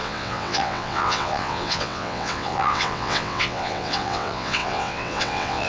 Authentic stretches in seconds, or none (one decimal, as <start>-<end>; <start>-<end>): none